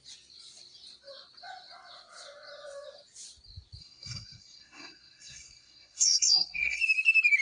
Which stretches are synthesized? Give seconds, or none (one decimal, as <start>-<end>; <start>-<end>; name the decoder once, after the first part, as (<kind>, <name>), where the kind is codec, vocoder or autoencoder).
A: 3.8-6.8 (codec, SNAC)